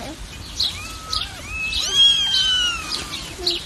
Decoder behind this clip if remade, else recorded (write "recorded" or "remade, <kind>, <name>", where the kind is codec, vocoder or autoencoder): remade, vocoder, BigVGAN v2